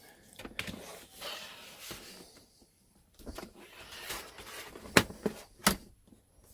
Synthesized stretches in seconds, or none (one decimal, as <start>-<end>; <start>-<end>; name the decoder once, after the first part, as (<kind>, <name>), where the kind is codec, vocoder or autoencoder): 1.1-5.0 (vocoder, BigVGAN v2)